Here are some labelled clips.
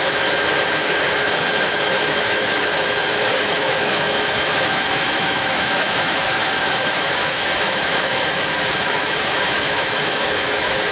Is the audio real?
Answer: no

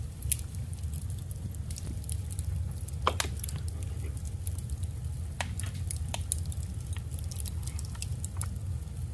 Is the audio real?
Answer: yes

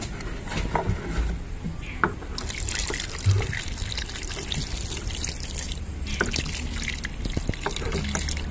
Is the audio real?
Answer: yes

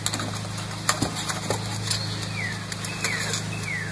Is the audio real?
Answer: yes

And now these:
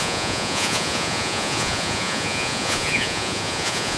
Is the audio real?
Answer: no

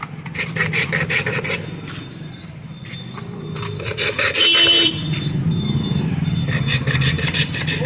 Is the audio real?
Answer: yes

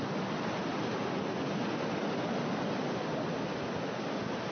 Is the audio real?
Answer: yes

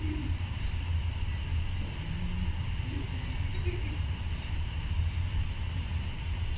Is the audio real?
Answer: yes